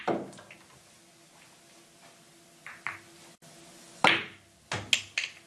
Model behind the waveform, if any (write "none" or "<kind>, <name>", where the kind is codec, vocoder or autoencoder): none